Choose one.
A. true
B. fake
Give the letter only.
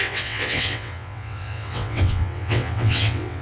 B